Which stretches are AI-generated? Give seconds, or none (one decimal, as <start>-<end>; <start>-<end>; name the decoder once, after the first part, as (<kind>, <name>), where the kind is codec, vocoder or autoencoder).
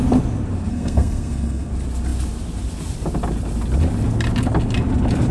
0.7-1.7 (codec, SNAC)